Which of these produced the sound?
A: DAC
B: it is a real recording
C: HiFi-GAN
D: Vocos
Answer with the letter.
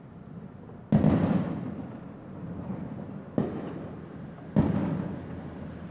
B